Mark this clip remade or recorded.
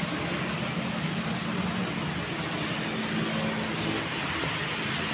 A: recorded